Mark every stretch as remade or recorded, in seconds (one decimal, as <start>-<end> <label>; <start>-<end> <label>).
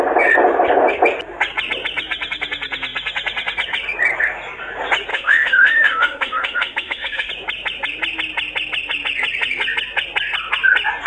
0.0-5.1 recorded; 5.1-7.3 remade; 7.3-11.1 recorded